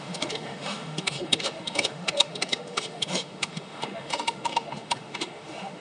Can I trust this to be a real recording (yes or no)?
no